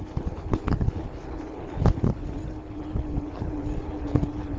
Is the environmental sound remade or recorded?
remade